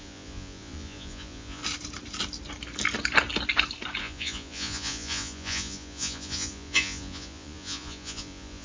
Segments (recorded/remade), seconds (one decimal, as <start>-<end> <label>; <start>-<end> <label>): 0.0-1.6 remade; 1.6-4.0 recorded; 4.0-8.6 remade